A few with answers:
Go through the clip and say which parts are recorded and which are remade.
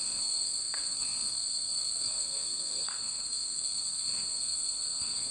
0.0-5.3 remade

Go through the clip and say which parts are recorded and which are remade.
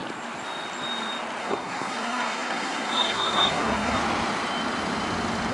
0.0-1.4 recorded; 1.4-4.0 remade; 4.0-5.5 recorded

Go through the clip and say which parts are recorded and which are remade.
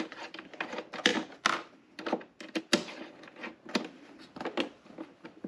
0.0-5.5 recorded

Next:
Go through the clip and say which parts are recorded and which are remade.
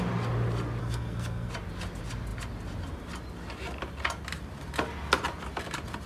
0.0-0.8 recorded; 0.8-1.5 remade; 1.5-6.1 recorded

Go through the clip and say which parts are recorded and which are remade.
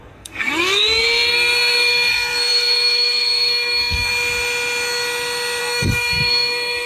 0.0-4.1 remade; 4.1-5.6 recorded; 5.6-6.9 remade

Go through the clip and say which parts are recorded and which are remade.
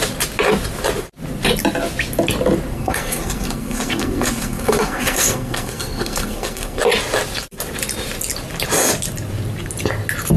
0.0-2.7 recorded; 2.7-6.8 remade; 6.8-10.4 recorded